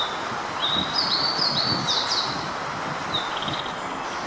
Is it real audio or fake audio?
real